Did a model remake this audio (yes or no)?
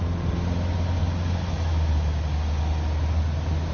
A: no